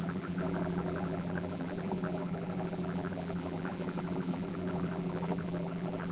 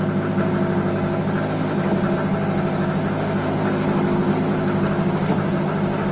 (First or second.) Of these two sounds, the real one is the second